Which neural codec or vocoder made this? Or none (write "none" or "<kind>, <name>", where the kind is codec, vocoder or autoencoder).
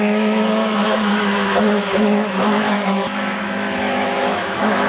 autoencoder, DAC-VAE